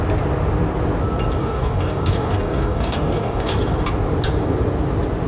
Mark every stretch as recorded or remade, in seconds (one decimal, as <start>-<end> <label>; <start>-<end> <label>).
0.0-1.4 recorded; 1.4-3.5 remade; 3.5-5.3 recorded